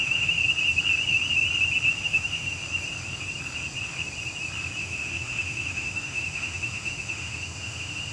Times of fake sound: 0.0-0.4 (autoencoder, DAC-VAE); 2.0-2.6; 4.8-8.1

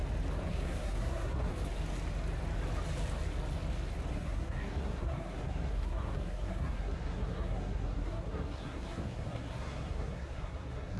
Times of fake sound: 0.5-1.5 (codec, SNAC); 4.1-11.0

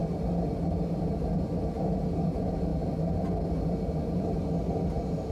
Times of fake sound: none